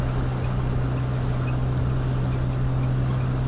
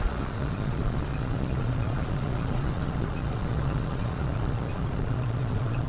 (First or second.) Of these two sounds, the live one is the first